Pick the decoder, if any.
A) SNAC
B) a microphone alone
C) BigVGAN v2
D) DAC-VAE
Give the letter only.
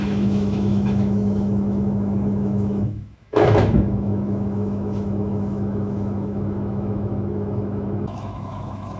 D